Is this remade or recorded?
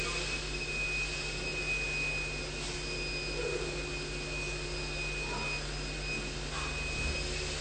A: recorded